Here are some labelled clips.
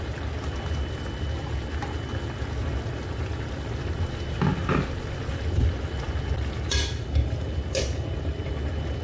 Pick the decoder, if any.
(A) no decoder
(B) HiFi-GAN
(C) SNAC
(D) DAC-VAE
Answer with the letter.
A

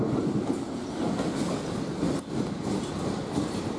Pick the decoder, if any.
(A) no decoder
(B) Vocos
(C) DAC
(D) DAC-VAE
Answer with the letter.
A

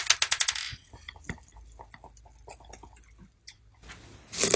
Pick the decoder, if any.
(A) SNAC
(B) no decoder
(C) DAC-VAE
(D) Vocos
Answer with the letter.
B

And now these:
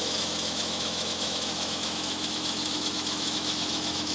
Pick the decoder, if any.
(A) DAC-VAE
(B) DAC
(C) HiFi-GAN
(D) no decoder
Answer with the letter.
A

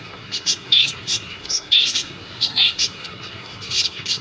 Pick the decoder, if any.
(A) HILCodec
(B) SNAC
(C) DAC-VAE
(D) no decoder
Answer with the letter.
B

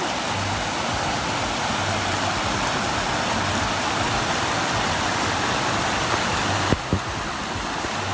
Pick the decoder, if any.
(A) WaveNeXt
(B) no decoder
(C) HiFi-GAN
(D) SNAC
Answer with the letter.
B